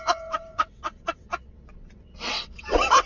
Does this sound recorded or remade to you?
remade